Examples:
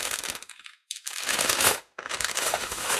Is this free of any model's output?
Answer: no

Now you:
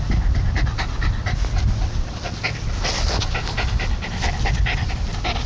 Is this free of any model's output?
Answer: yes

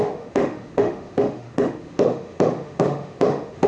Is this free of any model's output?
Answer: no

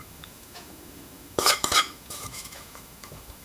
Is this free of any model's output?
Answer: no